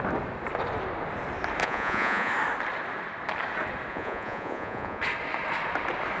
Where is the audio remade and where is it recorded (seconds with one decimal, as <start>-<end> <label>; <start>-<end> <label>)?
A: 0.0-1.6 recorded; 1.6-2.3 remade; 2.3-3.9 recorded; 3.9-5.0 remade; 5.0-6.2 recorded